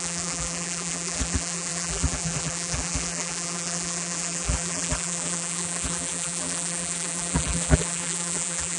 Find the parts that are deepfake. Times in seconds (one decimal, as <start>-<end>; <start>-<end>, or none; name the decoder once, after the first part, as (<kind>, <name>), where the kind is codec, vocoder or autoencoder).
0.0-8.8 (vocoder, BigVGAN v2)